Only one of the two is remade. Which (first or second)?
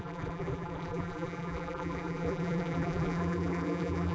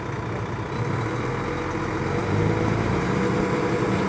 first